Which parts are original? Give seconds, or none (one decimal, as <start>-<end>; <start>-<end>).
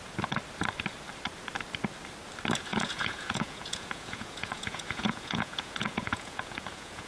0.0-2.7